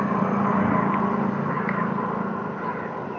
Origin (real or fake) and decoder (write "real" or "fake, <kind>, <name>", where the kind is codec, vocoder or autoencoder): real